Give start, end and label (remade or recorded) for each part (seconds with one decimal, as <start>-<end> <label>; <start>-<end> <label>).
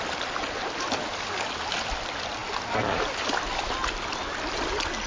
0.0-5.1 recorded